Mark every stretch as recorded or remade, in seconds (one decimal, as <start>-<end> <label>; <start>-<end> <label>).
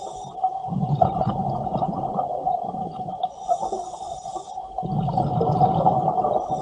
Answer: 0.0-0.6 recorded; 0.6-4.6 remade; 4.6-6.6 recorded